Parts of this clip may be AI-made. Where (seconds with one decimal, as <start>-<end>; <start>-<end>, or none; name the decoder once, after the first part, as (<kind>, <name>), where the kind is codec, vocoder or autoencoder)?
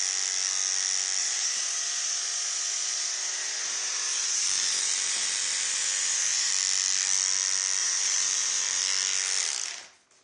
1.2-6.5 (vocoder, BigVGAN v2); 7.8-8.8